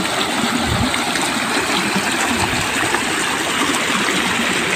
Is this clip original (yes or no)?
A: yes